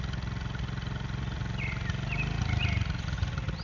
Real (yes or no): yes